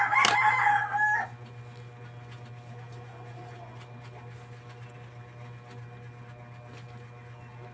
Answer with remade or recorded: recorded